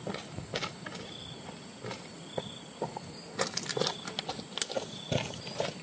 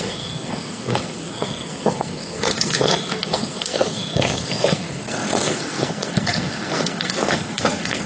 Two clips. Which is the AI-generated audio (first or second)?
second